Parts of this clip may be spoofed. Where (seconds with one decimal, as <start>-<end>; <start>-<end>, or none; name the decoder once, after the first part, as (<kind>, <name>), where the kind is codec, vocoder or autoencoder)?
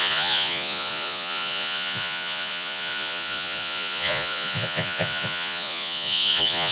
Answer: 0.0-6.7 (vocoder, Vocos)